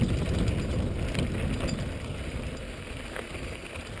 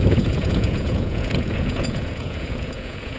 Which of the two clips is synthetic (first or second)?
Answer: second